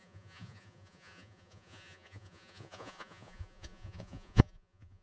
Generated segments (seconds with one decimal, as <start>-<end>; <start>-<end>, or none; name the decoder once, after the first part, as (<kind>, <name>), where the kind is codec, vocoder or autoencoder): 0.0-5.0 (vocoder, Vocos)